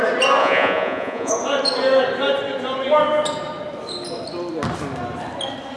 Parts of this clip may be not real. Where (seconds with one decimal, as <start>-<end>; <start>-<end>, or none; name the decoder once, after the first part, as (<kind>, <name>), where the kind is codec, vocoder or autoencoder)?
0.4-1.3 (vocoder, Vocos)